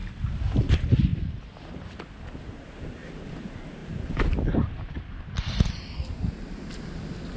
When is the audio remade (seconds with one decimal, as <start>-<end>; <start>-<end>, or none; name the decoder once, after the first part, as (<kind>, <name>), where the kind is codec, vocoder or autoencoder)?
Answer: none